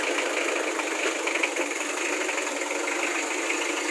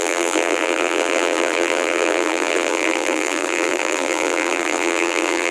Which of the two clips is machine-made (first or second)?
second